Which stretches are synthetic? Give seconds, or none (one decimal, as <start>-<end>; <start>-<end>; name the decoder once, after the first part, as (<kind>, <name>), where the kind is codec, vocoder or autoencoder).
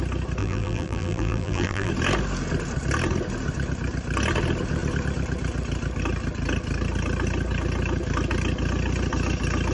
0.4-1.9 (vocoder, BigVGAN v2)